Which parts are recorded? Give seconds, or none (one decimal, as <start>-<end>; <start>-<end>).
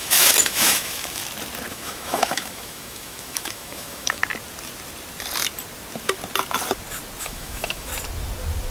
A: 1.2-1.7; 4.2-7.2; 7.9-8.7